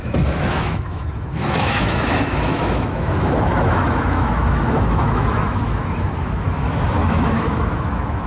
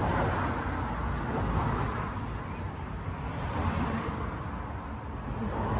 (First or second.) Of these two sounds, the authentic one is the second